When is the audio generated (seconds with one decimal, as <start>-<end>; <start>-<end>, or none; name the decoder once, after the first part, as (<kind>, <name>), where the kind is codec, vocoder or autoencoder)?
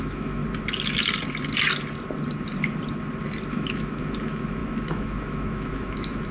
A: 0.0-0.4 (autoencoder, DAC-VAE); 3.5-6.3